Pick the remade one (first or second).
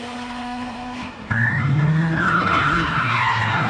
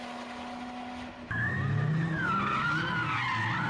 first